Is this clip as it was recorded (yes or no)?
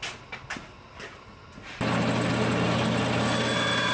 yes